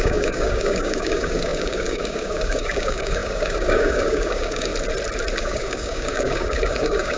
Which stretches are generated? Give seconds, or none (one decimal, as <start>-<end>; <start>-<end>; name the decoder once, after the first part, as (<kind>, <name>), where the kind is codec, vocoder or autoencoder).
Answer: 0.0-4.7 (codec, DAC); 5.4-7.2